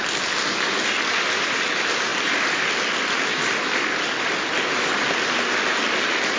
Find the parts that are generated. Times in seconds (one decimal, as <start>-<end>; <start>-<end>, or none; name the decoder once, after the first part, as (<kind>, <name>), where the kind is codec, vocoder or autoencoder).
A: 2.1-5.0 (vocoder, BigVGAN v2)